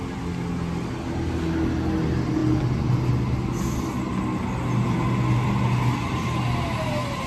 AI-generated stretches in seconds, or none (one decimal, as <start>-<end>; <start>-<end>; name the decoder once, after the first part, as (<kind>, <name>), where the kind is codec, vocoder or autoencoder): none